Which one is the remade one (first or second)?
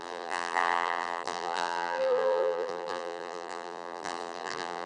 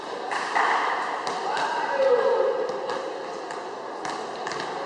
first